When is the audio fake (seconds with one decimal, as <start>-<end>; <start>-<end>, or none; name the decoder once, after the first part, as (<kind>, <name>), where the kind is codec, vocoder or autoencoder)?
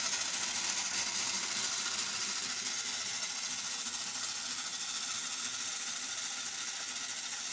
none